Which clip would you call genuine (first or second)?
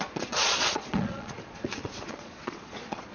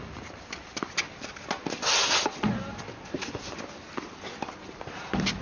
second